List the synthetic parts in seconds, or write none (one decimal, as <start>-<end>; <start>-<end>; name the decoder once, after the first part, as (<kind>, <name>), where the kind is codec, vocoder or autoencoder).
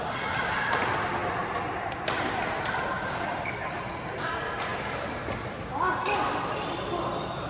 none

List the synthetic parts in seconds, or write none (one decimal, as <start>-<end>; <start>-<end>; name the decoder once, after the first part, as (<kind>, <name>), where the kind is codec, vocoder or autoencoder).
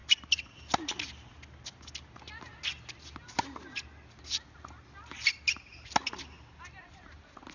none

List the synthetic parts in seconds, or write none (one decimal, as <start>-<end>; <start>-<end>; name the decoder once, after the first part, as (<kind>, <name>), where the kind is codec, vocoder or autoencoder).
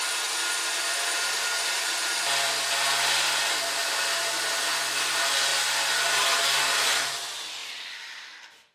none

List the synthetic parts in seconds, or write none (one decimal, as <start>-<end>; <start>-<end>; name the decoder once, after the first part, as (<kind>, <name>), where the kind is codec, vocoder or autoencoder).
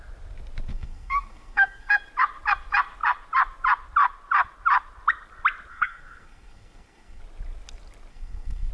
0.7-1.9 (codec, SNAC); 5.7-7.2; 8.1-8.7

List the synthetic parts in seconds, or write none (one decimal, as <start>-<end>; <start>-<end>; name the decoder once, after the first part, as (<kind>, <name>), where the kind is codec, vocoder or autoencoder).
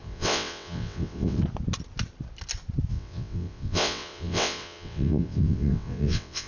0.0-1.4 (vocoder, WaveNeXt); 2.9-6.5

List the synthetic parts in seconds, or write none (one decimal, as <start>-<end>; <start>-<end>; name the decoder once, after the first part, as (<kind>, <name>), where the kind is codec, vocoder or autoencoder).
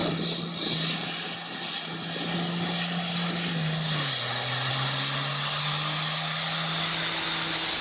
none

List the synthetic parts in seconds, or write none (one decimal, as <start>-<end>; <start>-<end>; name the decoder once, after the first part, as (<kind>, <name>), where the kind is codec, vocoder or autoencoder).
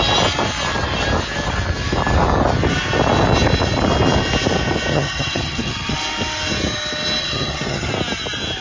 4.9-6.0 (vocoder, HiFi-GAN); 7.2-7.9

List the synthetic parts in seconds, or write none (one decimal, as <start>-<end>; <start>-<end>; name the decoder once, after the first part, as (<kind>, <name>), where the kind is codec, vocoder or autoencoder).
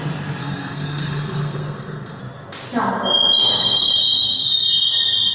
0.4-2.2 (codec, SNAC); 3.4-3.9